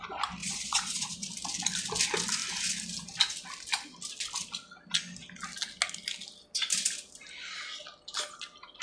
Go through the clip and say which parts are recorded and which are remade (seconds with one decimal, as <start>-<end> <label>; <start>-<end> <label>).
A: 0.0-0.4 recorded; 0.4-1.3 remade; 1.3-8.8 recorded